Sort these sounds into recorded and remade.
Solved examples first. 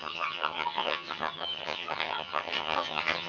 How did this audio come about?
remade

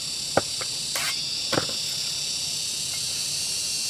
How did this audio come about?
recorded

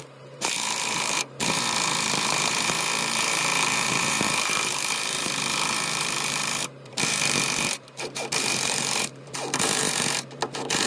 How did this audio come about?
remade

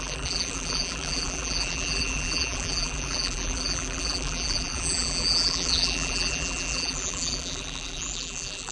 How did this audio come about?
remade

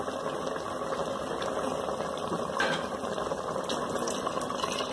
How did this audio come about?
recorded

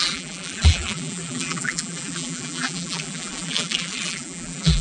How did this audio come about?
remade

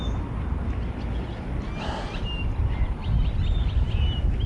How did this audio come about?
recorded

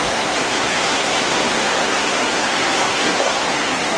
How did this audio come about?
remade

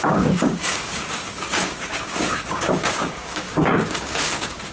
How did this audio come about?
remade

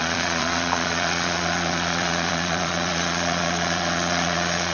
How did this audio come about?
remade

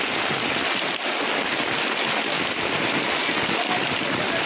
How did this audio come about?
recorded